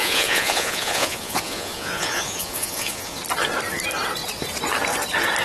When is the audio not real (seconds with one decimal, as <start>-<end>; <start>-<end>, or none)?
0.0-3.2